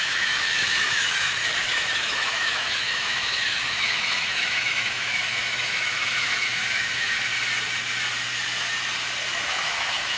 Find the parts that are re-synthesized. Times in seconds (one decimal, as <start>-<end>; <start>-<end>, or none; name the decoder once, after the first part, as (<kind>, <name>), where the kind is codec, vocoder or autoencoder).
0.0-7.3 (autoencoder, DAC-VAE); 9.3-10.2